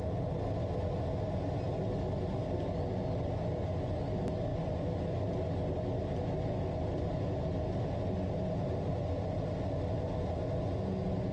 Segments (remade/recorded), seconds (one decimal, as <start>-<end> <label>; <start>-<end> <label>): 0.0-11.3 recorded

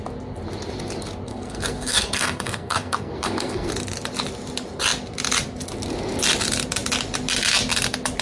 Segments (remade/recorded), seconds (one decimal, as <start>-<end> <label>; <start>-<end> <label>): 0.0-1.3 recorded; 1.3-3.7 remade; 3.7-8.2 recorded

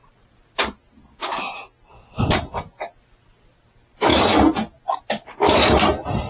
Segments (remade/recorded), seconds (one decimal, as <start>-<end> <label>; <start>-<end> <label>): 0.0-6.3 recorded

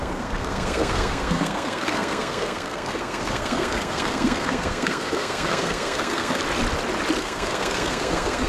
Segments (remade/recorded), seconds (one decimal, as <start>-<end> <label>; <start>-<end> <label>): 0.0-6.4 remade; 6.4-7.2 recorded; 7.2-8.5 remade

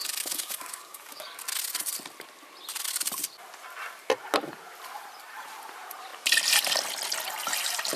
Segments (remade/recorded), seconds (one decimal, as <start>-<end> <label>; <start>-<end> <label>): 0.0-1.4 remade; 1.4-8.0 recorded

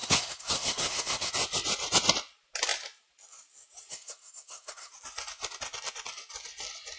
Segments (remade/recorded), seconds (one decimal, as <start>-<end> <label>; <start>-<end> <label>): 0.0-1.3 remade; 1.3-3.9 recorded; 3.9-4.9 remade; 4.9-7.0 recorded

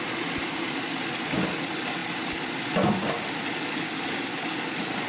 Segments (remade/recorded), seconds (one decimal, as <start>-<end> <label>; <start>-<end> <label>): 0.0-5.1 recorded